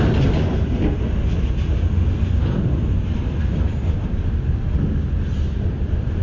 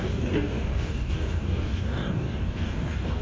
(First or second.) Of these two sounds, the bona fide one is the first